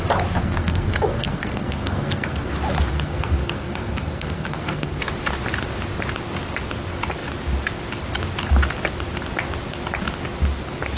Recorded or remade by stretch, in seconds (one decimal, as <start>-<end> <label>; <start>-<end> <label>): 0.0-0.4 recorded; 0.4-2.5 remade; 2.5-2.9 recorded; 2.9-5.0 remade; 5.0-11.0 recorded